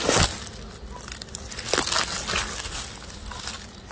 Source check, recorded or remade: recorded